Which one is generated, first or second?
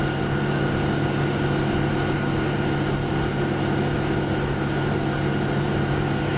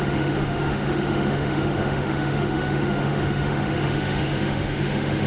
second